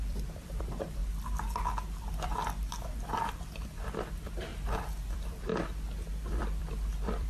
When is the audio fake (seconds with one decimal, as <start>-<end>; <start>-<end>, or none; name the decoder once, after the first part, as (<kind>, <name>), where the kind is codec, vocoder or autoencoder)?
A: 0.0-1.0 (vocoder, BigVGAN v2); 3.2-4.5; 5.1-5.5; 6.2-7.3